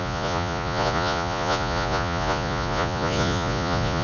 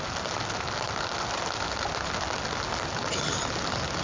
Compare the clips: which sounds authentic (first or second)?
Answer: second